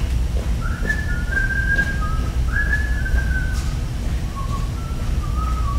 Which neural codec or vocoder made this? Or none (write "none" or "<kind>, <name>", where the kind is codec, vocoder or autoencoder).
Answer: none